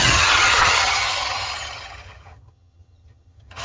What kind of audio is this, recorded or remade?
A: remade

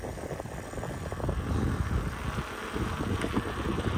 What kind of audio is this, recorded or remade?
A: recorded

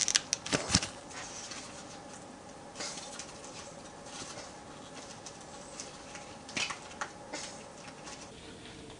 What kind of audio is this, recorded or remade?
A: recorded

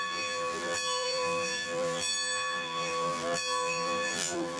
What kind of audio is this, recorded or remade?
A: remade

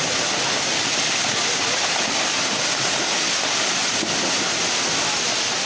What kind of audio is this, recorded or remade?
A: recorded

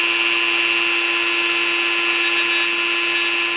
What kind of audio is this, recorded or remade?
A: recorded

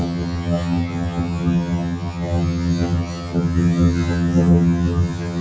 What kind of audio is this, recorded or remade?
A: remade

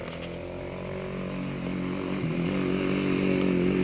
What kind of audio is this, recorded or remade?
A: recorded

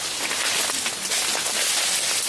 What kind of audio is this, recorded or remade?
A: recorded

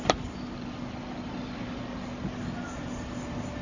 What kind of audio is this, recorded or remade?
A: recorded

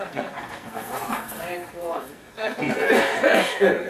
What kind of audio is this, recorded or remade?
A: remade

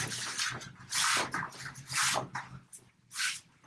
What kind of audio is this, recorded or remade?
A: recorded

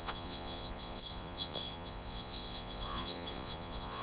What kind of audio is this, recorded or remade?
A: remade